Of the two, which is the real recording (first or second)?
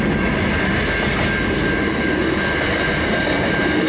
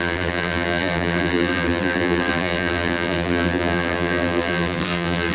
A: first